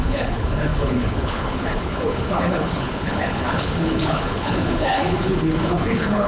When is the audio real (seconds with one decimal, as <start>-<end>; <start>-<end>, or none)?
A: none